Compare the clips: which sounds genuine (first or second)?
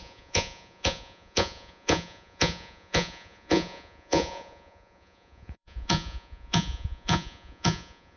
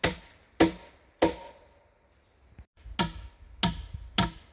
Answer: second